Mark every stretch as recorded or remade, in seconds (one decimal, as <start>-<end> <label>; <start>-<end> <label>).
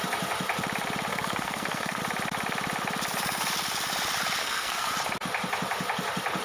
0.0-1.1 recorded; 1.1-2.0 remade; 2.0-4.4 recorded; 4.4-4.9 remade; 4.9-6.4 recorded